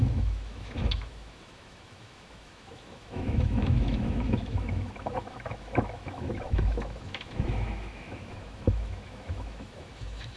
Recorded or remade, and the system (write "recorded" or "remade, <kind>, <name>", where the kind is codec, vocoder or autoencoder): remade, autoencoder, DAC-VAE